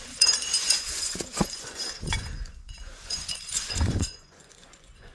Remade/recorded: remade